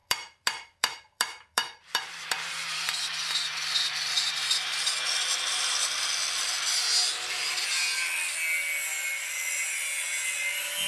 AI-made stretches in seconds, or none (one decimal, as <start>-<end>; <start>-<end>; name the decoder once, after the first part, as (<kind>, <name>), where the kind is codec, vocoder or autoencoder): 0.0-4.8 (vocoder, BigVGAN v2)